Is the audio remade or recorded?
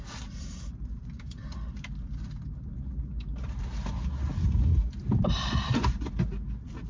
recorded